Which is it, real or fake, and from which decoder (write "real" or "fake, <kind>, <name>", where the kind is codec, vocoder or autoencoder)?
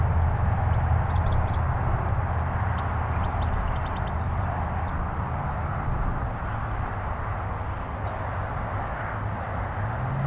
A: real